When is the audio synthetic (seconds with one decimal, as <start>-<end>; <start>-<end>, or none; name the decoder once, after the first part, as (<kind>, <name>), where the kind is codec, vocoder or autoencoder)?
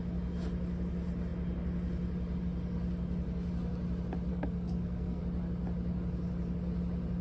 4.3-5.2 (codec, SNAC)